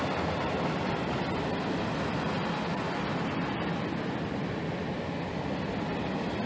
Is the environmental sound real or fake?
real